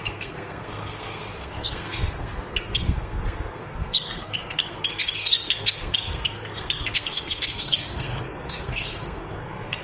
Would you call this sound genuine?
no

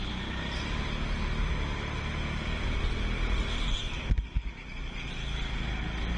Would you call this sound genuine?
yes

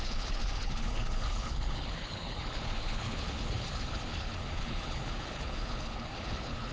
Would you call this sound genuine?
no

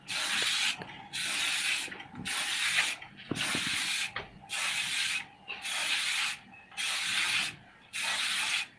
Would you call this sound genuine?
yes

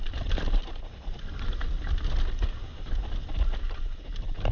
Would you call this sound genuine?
yes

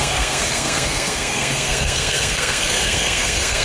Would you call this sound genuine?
no